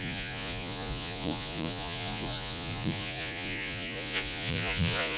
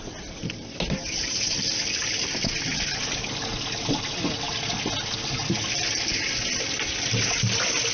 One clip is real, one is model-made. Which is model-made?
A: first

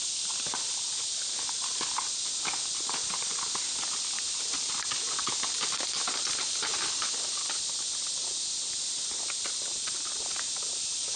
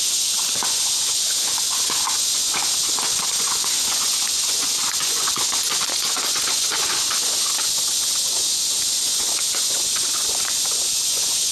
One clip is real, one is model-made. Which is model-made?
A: second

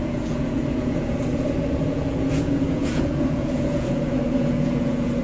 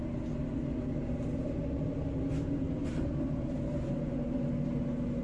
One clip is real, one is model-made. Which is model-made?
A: first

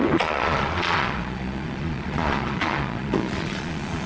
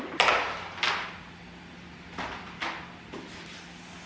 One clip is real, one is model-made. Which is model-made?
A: first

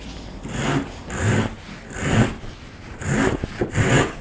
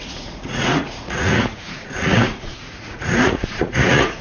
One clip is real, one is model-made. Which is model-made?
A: second